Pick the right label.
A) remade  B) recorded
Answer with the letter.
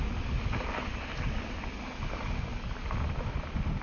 B